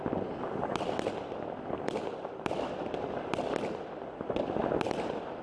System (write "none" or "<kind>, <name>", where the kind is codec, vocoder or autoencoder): none